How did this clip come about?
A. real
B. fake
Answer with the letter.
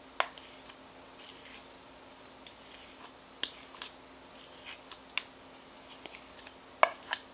A